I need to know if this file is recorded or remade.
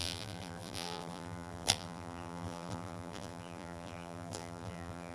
remade